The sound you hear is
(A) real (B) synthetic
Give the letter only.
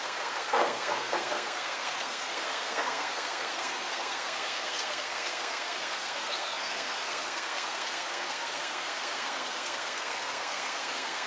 B